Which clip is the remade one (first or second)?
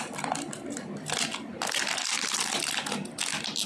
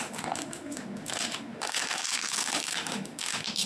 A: second